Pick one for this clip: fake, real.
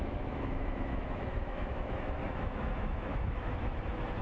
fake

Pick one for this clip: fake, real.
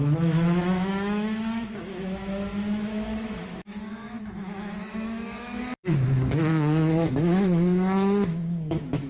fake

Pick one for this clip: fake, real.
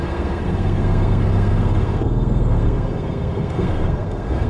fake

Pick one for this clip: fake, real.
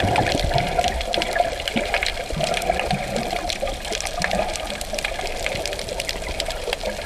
fake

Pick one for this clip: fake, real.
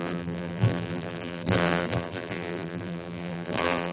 fake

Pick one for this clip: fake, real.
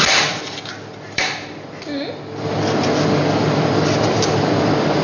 fake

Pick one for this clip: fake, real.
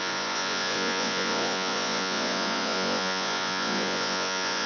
fake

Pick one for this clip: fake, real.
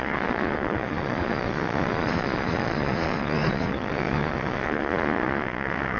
fake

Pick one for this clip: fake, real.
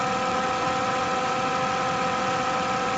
fake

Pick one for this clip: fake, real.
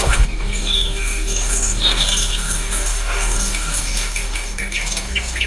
fake